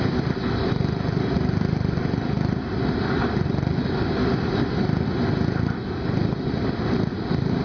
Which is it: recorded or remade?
recorded